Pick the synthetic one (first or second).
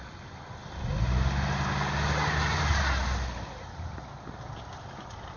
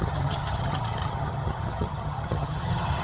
second